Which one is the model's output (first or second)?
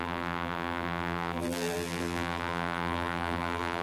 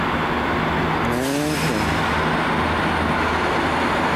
first